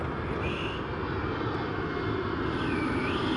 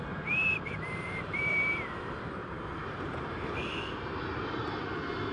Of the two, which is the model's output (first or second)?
second